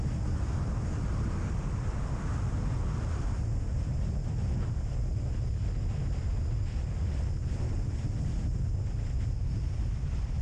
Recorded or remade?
recorded